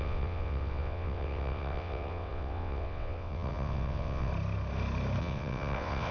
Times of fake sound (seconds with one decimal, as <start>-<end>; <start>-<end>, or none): 0.0-4.3; 5.2-6.1